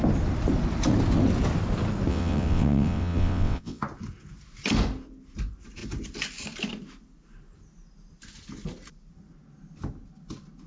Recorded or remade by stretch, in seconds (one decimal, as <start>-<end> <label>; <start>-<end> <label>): 0.0-2.1 recorded; 2.1-3.8 remade; 3.8-10.7 recorded